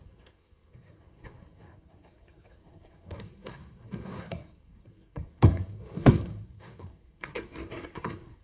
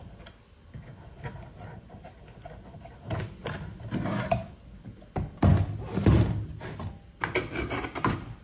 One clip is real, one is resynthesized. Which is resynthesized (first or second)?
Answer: first